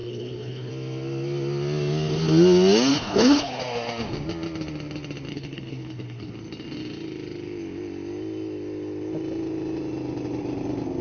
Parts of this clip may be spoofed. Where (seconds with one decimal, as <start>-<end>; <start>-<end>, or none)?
0.0-0.7; 2.9-3.6; 5.3-6.3